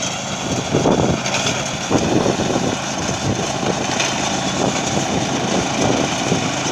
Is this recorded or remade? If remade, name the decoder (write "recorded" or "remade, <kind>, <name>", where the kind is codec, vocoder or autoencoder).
recorded